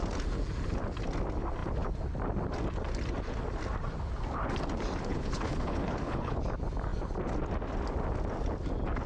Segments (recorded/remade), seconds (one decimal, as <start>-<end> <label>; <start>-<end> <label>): 0.0-5.1 recorded; 5.1-6.3 remade; 6.3-9.1 recorded